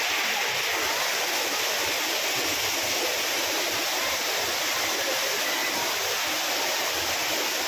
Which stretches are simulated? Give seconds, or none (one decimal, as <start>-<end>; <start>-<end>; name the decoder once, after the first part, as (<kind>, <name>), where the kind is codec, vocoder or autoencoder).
none